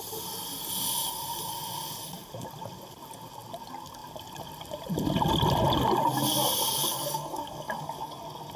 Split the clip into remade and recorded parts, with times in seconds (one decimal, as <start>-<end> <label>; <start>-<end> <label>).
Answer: 0.0-6.7 recorded; 6.7-8.2 remade; 8.2-8.6 recorded